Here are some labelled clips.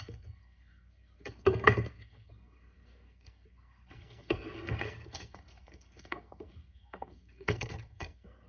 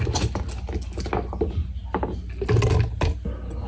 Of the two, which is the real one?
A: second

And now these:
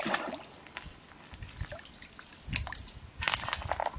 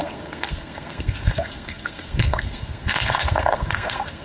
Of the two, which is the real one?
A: first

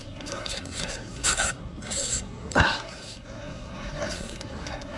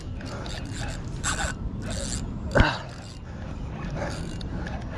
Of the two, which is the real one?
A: second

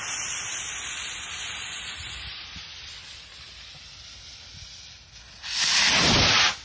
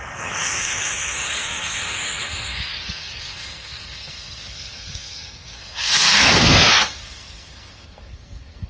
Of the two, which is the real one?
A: first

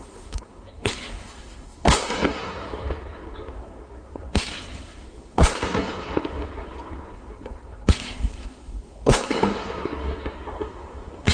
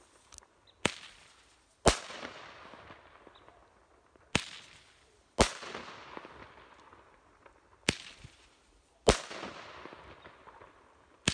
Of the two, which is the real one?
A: second